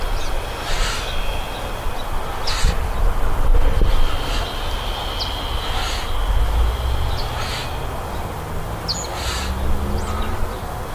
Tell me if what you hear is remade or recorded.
recorded